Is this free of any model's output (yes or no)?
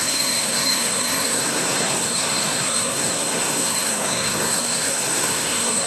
no